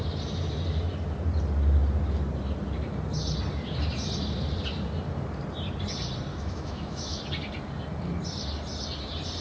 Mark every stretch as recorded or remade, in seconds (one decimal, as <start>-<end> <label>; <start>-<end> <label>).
0.0-6.3 recorded; 6.3-7.2 remade; 7.2-9.4 recorded